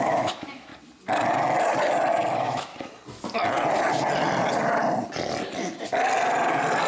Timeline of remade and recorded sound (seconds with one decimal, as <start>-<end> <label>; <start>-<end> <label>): 0.0-0.7 remade; 0.7-2.3 recorded; 2.3-2.7 remade; 2.7-6.9 recorded